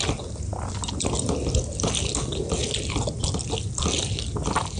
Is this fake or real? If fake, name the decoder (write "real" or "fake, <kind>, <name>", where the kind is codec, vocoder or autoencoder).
real